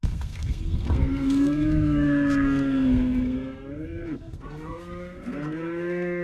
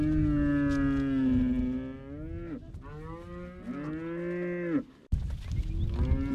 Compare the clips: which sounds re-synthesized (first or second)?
first